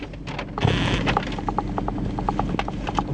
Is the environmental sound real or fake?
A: real